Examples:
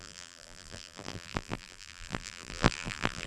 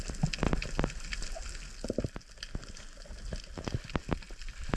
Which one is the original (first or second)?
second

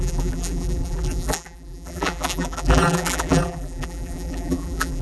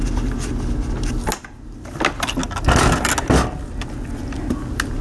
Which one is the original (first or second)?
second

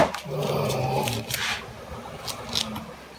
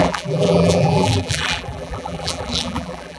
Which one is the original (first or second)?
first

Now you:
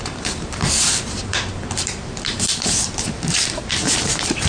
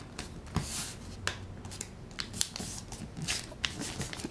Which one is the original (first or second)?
second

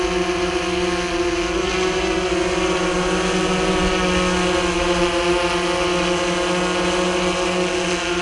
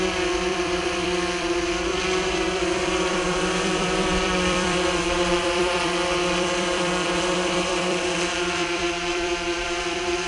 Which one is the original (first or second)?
first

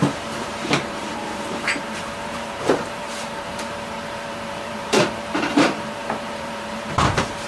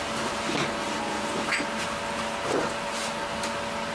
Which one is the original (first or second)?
second